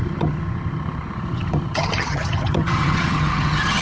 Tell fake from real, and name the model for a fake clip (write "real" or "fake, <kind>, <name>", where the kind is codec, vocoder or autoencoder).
fake, vocoder, HiFi-GAN